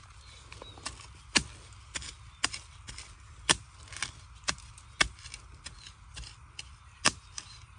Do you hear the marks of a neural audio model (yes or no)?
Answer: no